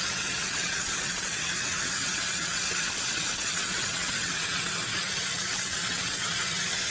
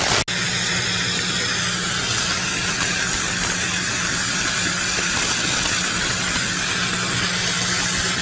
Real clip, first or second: second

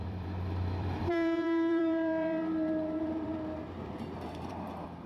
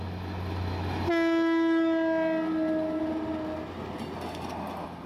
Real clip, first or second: second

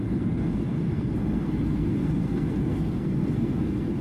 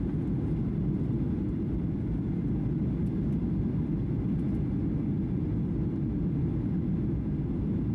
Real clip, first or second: second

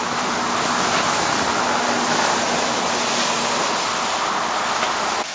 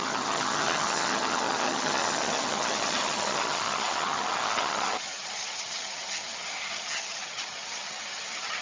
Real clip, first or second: first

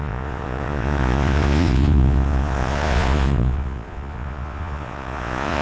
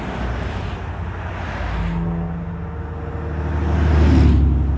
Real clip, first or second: second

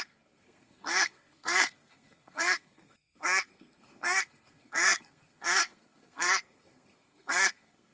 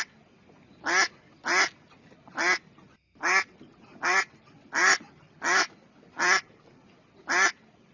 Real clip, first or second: second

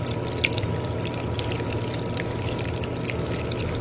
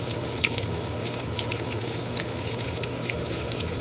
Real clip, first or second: first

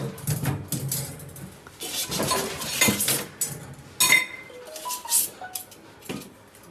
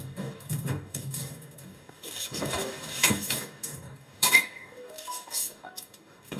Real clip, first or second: first